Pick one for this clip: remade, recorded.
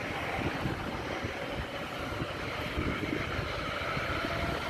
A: recorded